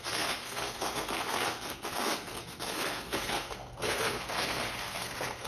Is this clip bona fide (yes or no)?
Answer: no